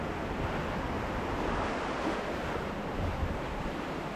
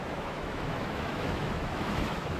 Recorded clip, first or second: first